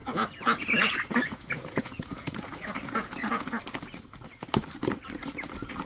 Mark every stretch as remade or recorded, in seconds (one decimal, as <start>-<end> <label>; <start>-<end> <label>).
0.0-3.5 remade; 3.5-5.9 recorded